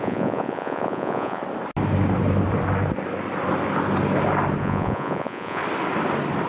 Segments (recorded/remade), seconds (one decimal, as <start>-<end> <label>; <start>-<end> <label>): 0.0-1.4 remade; 1.4-4.6 recorded; 4.6-5.6 remade; 5.6-6.5 recorded